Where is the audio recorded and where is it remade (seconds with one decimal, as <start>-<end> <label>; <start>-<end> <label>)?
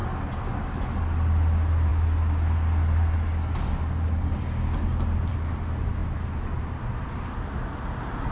0.0-8.3 recorded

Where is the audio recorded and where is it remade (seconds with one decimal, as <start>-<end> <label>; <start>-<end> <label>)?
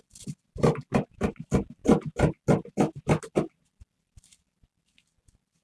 0.0-5.6 recorded